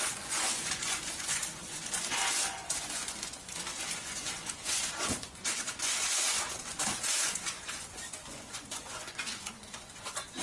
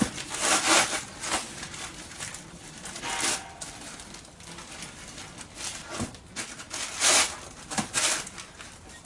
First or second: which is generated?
first